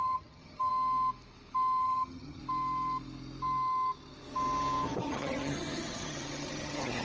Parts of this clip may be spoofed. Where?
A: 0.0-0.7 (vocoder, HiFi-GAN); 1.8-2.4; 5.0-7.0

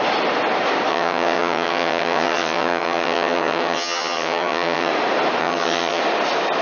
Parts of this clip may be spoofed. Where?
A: 0.9-4.9 (vocoder, HiFi-GAN); 5.4-6.0

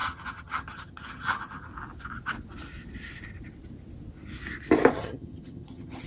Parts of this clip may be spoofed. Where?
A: 0.0-1.7 (vocoder, HiFi-GAN); 4.9-6.1

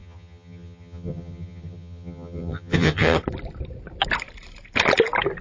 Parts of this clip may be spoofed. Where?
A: 0.0-3.2 (vocoder, HiFi-GAN)

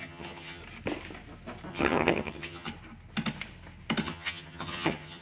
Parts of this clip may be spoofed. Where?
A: 0.0-0.6 (vocoder, HiFi-GAN); 1.7-2.7; 4.0-5.2